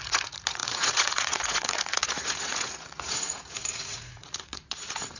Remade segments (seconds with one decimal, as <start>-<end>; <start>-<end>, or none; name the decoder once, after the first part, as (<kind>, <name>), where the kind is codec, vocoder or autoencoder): 0.0-5.2 (vocoder, Vocos)